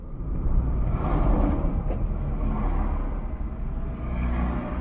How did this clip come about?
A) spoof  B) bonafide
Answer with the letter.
B